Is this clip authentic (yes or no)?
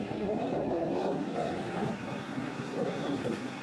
no